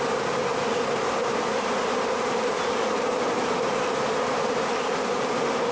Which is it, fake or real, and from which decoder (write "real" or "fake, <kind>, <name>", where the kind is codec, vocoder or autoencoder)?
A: real